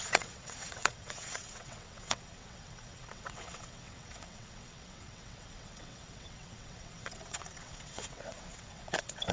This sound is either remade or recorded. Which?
remade